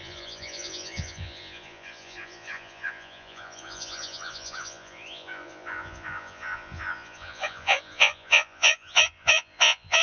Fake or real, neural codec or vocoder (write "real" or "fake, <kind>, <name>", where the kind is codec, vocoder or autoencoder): fake, vocoder, Vocos